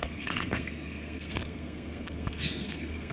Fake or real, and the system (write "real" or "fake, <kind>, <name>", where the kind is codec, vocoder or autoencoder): fake, codec, SNAC